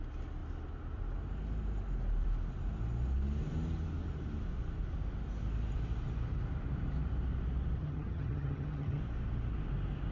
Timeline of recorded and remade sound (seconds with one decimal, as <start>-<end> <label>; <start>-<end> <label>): 0.0-7.8 recorded; 7.8-9.0 remade; 9.0-10.1 recorded